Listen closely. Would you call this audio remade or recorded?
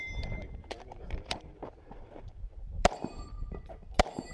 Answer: remade